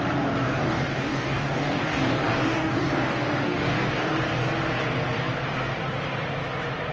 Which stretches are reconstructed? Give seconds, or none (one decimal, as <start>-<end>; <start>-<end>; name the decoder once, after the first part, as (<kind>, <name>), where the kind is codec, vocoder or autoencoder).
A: 0.5-4.1 (codec, DAC)